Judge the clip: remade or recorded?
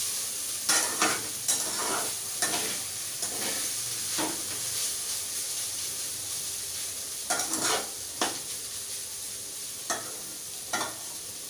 recorded